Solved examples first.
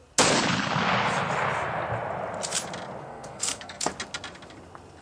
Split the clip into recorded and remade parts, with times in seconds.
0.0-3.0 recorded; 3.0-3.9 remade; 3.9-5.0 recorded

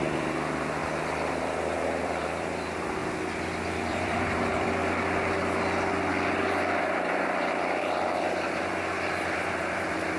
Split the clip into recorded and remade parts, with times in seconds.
0.0-0.8 remade; 0.8-1.3 recorded; 1.3-3.0 remade; 3.0-3.9 recorded; 3.9-4.8 remade; 4.8-6.8 recorded; 6.8-10.2 remade

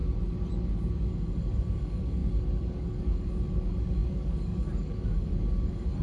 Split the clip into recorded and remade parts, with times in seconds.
0.0-1.0 recorded; 1.0-6.0 remade

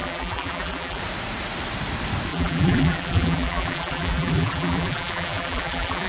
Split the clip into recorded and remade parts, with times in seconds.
0.0-1.0 remade; 1.0-2.3 recorded; 2.3-6.1 remade

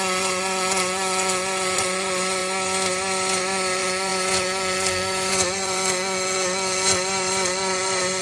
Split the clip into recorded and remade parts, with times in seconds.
0.0-2.4 remade; 2.4-3.4 recorded; 3.4-8.2 remade

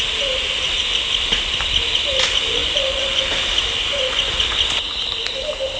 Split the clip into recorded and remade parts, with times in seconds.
0.0-2.6 recorded; 2.6-3.2 remade; 3.2-3.8 recorded; 3.8-4.3 remade; 4.3-5.8 recorded

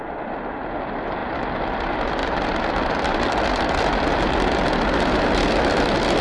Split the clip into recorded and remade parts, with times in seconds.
0.0-1.2 recorded; 1.2-1.8 remade; 1.8-2.2 recorded; 2.2-6.2 remade